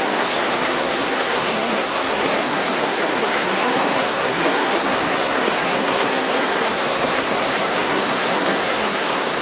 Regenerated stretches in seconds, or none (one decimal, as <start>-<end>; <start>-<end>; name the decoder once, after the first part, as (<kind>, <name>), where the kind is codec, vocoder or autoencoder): 0.0-9.4 (codec, SNAC)